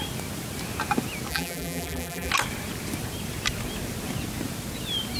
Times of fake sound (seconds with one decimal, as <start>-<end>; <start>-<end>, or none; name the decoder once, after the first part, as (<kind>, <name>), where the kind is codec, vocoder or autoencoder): 1.3-2.3 (vocoder, BigVGAN v2)